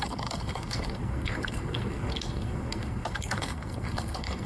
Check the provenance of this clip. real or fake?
fake